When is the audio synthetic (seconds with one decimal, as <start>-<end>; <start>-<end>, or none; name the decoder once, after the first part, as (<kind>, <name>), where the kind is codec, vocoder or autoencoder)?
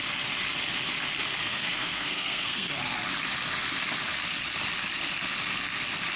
1.4-2.7 (codec, SNAC)